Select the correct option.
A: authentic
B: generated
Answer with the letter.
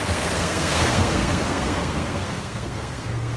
B